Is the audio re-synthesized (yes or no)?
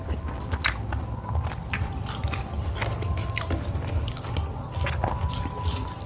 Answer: no